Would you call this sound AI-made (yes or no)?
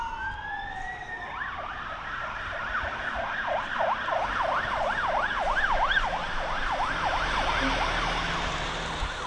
no